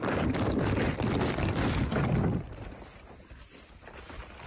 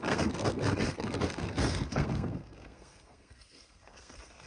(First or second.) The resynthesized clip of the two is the second